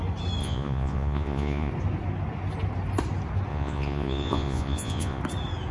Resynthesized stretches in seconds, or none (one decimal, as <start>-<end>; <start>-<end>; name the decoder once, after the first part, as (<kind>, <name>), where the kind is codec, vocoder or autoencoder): 0.4-1.7 (vocoder, Vocos); 3.5-5.2